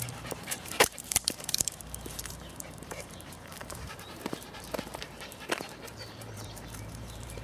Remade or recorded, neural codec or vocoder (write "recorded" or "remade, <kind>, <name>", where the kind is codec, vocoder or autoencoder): remade, vocoder, BigVGAN v2